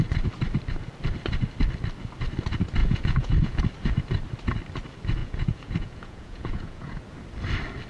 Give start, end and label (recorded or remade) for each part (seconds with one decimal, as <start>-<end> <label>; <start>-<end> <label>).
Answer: 0.0-2.8 recorded; 2.8-3.6 remade; 3.6-5.2 recorded; 5.2-7.0 remade; 7.0-7.9 recorded